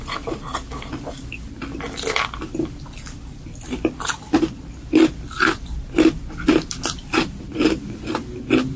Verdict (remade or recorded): remade